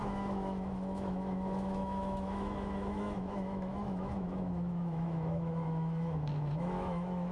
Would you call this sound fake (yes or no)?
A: yes